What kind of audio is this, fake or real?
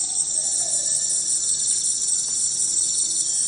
real